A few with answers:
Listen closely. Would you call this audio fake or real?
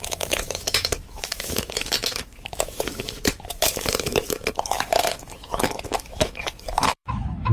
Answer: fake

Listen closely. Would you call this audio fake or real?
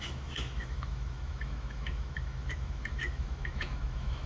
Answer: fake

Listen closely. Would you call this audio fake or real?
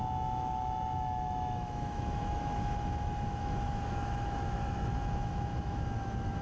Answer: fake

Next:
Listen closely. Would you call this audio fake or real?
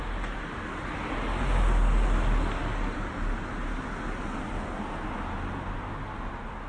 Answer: real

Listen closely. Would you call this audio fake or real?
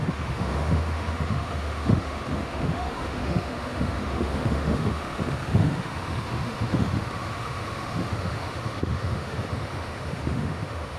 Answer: fake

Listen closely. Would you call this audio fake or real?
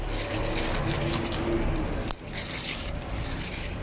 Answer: real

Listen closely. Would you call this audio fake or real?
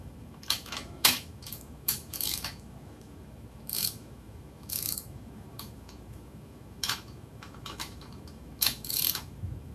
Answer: fake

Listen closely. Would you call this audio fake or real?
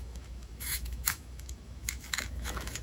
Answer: fake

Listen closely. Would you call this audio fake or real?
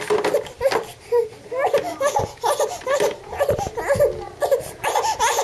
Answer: real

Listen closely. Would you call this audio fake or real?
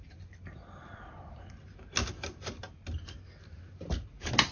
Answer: real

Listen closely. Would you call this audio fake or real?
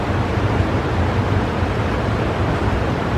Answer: real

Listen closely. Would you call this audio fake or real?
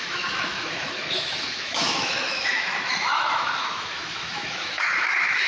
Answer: fake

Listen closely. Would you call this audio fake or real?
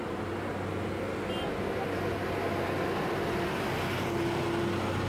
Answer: real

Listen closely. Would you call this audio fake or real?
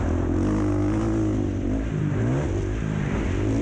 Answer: real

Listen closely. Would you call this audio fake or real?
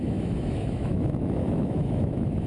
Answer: fake